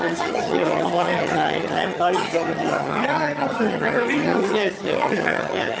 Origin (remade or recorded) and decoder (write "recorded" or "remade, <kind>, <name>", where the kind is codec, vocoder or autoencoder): remade, vocoder, HiFi-GAN